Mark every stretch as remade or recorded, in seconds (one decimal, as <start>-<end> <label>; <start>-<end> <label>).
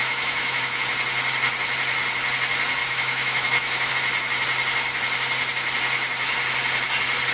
0.0-0.8 remade; 0.8-2.8 recorded; 2.8-3.9 remade; 3.9-7.3 recorded